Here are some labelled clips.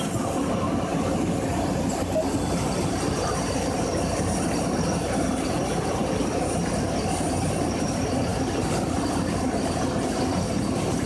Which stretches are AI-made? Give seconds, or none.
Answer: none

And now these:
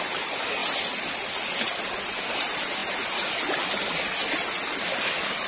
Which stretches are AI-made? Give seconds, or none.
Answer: none

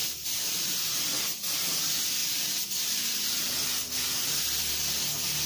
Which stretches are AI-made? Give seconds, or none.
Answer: 0.0-0.9 (vocoder, BigVGAN v2)